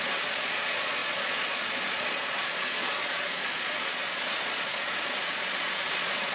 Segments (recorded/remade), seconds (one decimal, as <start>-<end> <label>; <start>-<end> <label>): 0.0-6.3 remade